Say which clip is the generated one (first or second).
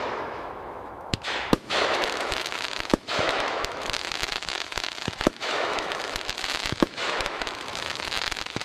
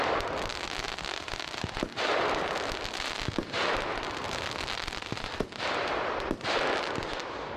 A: first